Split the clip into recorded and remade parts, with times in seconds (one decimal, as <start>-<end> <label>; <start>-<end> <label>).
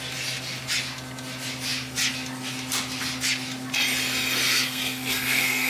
0.0-4.5 recorded; 4.5-5.7 remade